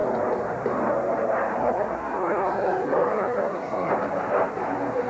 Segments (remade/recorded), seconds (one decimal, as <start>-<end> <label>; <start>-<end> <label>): 0.0-1.6 recorded; 1.6-3.9 remade; 3.9-5.1 recorded